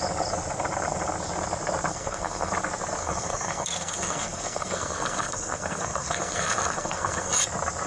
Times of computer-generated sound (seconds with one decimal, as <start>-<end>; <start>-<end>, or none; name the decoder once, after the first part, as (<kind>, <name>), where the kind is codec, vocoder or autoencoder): 1.9-2.5 (codec, SNAC); 3.0-7.3